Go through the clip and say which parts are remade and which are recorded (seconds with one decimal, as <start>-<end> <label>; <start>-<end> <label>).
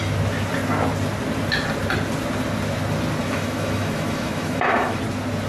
0.0-3.2 recorded; 3.2-5.0 remade; 5.0-5.5 recorded